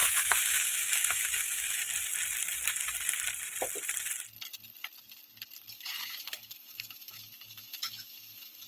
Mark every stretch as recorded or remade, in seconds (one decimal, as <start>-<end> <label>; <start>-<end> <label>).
0.0-1.8 remade; 1.8-5.7 recorded; 5.7-8.7 remade